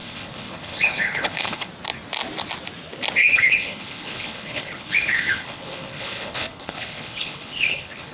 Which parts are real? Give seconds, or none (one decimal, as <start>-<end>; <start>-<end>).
1.7-3.3